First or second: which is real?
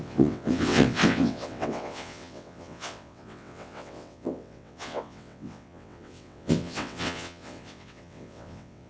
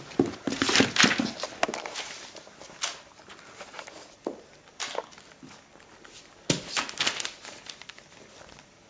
second